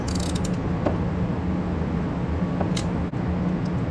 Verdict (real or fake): real